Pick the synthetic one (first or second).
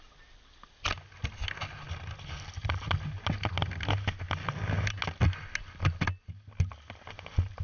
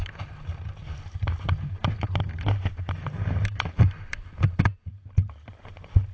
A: second